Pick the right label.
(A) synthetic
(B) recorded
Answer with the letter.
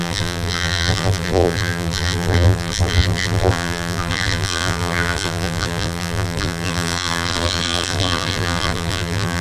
A